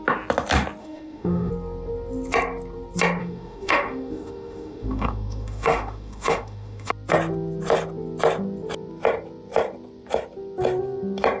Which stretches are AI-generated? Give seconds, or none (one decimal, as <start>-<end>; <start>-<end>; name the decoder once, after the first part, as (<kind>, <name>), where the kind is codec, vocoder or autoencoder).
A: 0.8-1.5 (autoencoder, DAC-VAE); 3.2-6.9